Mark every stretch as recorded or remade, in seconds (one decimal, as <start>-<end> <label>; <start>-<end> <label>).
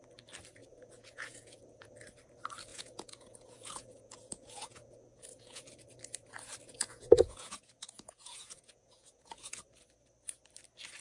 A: 0.0-0.6 recorded; 0.6-1.9 remade; 1.9-2.7 recorded; 2.7-5.6 remade; 5.6-6.7 recorded; 6.7-9.6 remade; 9.6-11.0 recorded